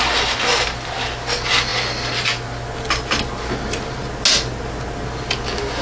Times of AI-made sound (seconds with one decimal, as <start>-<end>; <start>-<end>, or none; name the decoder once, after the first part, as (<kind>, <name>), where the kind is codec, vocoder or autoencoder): none